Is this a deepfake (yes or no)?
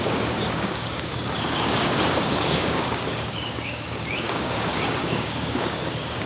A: yes